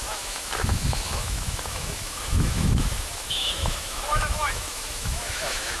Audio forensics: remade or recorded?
remade